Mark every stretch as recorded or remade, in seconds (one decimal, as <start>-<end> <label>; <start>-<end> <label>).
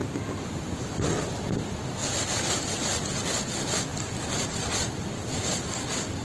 0.0-6.2 recorded